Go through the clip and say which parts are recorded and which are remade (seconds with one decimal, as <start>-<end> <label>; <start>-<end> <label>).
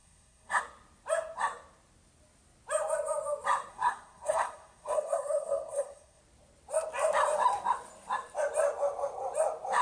0.0-0.6 remade; 0.6-3.7 recorded; 3.7-6.2 remade; 6.2-9.8 recorded